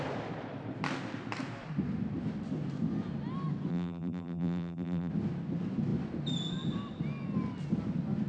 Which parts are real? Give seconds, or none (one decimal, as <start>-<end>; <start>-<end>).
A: 0.0-3.7; 5.1-8.3